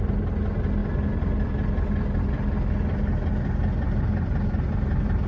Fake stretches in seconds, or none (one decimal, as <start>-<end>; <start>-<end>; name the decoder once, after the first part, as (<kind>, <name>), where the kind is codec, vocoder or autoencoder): none